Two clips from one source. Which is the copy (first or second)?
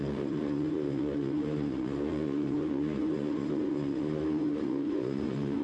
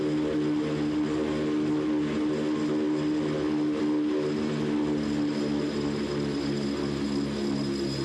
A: first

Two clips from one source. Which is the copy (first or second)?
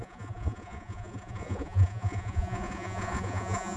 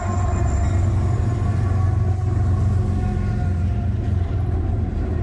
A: first